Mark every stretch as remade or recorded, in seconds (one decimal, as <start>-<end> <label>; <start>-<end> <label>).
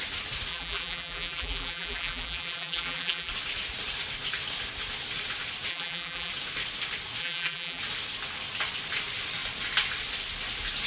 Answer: 0.0-0.5 recorded; 0.5-3.3 remade; 3.3-5.7 recorded; 5.7-6.3 remade; 6.3-7.2 recorded; 7.2-7.8 remade; 7.8-10.9 recorded